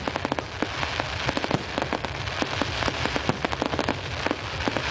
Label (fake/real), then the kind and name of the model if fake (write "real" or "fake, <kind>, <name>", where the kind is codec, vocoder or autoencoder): real